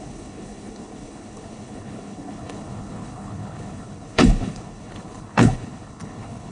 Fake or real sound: fake